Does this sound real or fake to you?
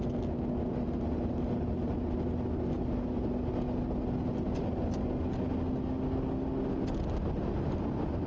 real